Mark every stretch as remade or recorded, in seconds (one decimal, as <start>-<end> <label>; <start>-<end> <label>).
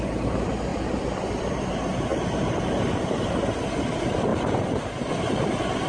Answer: 0.0-0.7 recorded; 0.7-1.5 remade; 1.5-2.1 recorded; 2.1-3.5 remade; 3.5-5.9 recorded